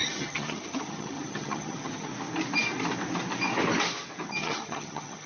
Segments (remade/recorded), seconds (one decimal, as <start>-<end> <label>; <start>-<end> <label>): 0.0-2.1 remade; 2.1-4.3 recorded; 4.3-5.3 remade